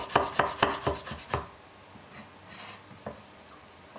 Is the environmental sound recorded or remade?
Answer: recorded